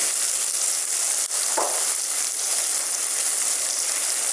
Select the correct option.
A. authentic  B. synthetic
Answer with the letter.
A